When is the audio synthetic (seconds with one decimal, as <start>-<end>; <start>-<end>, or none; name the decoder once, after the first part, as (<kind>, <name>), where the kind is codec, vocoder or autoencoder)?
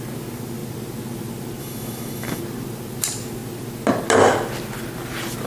1.6-2.4 (autoencoder, DAC-VAE)